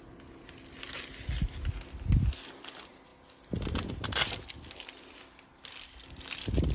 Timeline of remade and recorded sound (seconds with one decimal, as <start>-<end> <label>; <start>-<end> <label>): 0.0-6.7 recorded